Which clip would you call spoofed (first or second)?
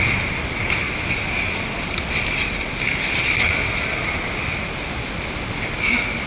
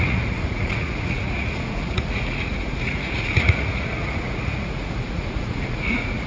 second